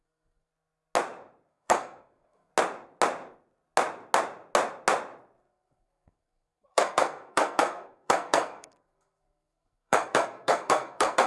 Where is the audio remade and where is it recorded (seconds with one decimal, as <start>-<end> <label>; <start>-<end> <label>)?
0.0-0.5 remade; 0.5-1.5 recorded; 1.5-2.5 remade; 2.5-5.5 recorded; 5.5-11.3 remade